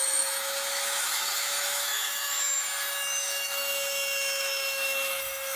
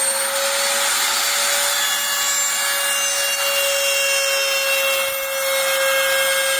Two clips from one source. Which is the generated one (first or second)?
first